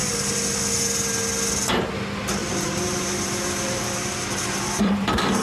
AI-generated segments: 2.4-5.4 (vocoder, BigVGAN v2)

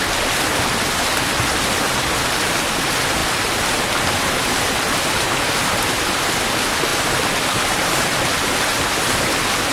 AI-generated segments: 6.9-9.2 (vocoder, BigVGAN v2)

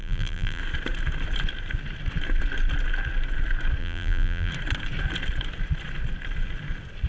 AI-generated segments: 0.0-0.6 (vocoder, BigVGAN v2); 3.8-4.5

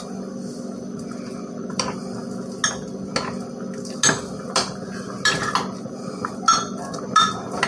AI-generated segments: none

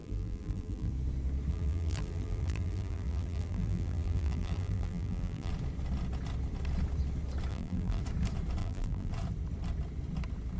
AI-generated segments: 0.0-0.9 (vocoder, BigVGAN v2); 1.5-5.5; 7.5-8.0; 8.6-9.1

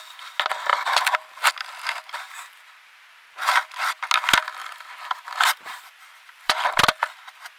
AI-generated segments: 0.7-1.5 (vocoder, BigVGAN v2); 4.6-7.6

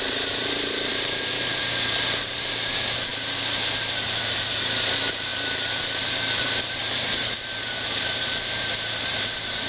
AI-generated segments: 0.0-3.1 (vocoder, BigVGAN v2); 3.9-9.7